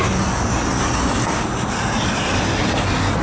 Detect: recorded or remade recorded